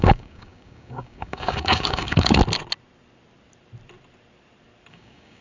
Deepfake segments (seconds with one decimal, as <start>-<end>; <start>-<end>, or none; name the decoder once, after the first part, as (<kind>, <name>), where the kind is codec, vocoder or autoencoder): 0.0-2.4 (codec, DAC); 4.9-5.4

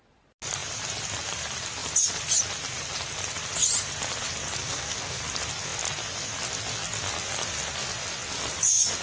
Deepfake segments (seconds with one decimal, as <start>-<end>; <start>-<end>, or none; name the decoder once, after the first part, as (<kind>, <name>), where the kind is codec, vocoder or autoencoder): 4.6-5.2 (codec, DAC)

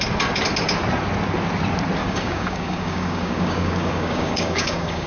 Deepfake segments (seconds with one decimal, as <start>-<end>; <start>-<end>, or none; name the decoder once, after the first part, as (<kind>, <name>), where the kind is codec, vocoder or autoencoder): 2.0-5.1 (codec, DAC)